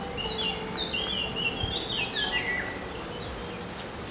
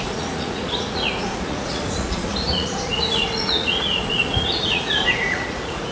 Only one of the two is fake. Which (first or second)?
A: second